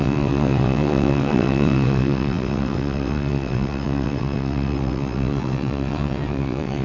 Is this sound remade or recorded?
remade